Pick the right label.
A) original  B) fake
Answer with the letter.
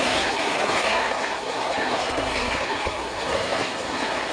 B